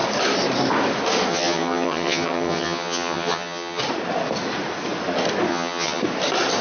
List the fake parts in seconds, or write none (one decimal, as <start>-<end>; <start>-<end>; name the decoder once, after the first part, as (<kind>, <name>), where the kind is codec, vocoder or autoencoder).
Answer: 1.3-3.8 (vocoder, HiFi-GAN); 5.5-6.0